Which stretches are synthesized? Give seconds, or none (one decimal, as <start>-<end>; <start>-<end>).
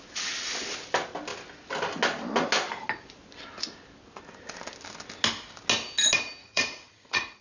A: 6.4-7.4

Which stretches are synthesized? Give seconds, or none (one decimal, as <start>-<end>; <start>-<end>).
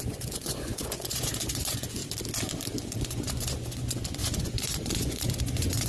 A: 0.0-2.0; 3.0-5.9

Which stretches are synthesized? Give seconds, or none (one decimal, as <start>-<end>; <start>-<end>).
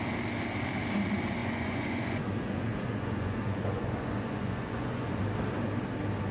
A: 1.4-5.2